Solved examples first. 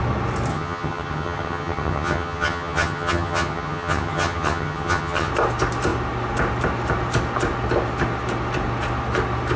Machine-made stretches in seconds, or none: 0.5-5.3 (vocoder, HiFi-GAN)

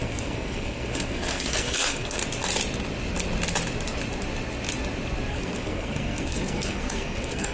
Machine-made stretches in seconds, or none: 0.0-2.2 (codec, SNAC); 5.3-7.5

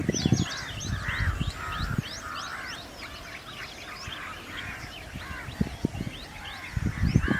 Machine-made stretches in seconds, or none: none